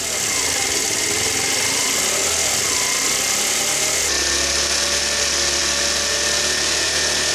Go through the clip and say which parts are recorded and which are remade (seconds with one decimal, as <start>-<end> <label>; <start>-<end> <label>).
0.0-7.3 recorded

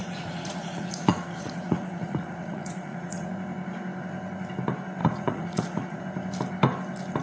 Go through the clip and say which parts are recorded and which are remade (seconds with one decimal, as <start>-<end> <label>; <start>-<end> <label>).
0.0-3.3 remade; 3.3-5.0 recorded; 5.0-6.0 remade; 6.0-7.2 recorded

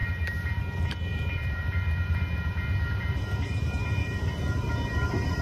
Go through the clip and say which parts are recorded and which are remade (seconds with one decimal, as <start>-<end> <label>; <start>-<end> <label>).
0.0-0.6 remade; 0.6-1.1 recorded; 1.1-4.3 remade; 4.3-5.4 recorded

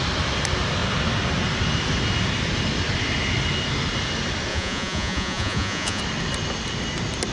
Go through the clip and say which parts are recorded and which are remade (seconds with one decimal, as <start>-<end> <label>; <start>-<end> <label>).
0.0-4.5 recorded; 4.5-6.0 remade; 6.0-7.3 recorded

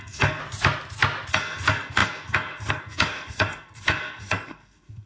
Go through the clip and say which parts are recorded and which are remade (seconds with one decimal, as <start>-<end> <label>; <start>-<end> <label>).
0.0-0.4 remade; 0.4-1.3 recorded; 1.3-5.1 remade

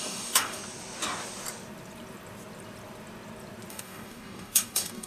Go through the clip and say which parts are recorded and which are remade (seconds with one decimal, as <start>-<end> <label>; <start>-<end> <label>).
0.0-0.6 remade; 0.6-3.7 recorded; 3.7-5.1 remade

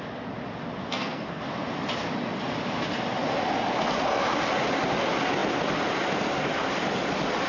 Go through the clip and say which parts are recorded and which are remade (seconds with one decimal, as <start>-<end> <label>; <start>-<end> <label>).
0.0-0.8 recorded; 0.8-1.4 remade; 1.4-7.5 recorded

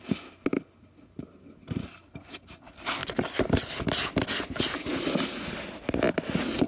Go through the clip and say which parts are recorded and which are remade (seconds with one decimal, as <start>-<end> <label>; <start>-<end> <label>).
0.0-6.7 recorded